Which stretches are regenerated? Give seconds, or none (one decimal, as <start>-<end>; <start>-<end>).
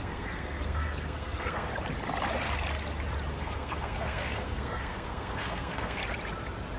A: 0.0-1.7; 3.3-6.0